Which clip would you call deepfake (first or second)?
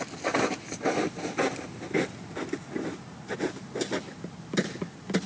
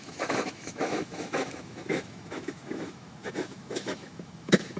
second